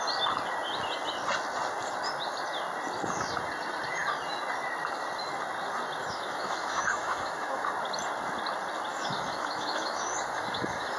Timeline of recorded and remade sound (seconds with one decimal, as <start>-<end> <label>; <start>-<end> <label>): 0.0-6.0 recorded; 6.0-7.7 remade; 7.7-8.9 recorded; 8.9-11.0 remade